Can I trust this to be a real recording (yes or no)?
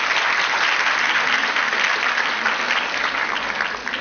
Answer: yes